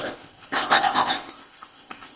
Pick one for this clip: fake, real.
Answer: fake